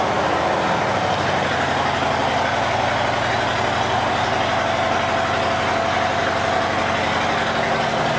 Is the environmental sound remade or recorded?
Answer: recorded